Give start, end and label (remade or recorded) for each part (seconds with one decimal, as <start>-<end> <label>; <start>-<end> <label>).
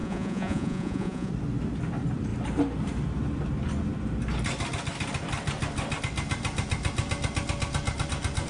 0.0-1.3 remade; 1.3-8.5 recorded